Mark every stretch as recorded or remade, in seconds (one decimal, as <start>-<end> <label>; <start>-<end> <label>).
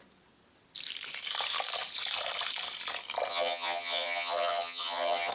0.0-3.3 recorded; 3.3-5.3 remade